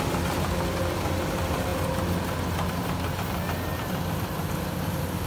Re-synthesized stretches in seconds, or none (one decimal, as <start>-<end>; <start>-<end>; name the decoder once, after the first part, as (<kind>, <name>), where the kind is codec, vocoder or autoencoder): none